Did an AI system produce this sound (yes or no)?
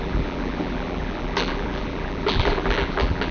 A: yes